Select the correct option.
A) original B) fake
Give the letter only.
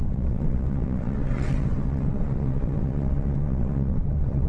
B